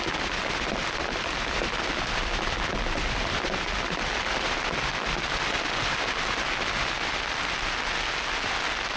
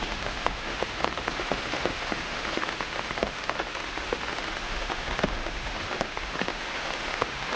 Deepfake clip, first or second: second